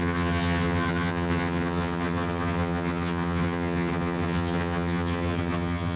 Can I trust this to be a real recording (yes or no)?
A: no